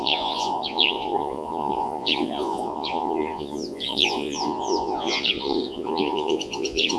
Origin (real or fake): fake